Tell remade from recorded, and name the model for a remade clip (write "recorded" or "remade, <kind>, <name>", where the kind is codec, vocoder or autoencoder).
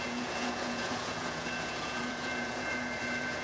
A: remade, vocoder, Vocos